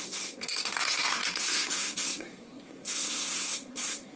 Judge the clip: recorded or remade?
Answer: remade